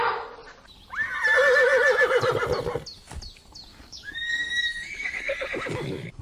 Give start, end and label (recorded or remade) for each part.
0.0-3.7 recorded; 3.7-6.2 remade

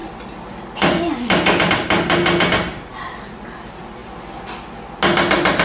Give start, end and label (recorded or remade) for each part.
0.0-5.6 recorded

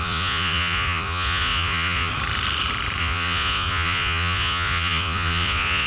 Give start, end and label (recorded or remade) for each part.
0.0-2.1 remade; 2.1-3.0 recorded; 3.0-5.9 remade